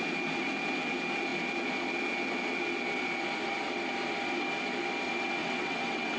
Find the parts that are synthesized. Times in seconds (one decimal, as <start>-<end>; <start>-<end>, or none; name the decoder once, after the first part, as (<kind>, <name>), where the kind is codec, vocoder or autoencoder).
5.4-6.2 (vocoder, WaveNeXt)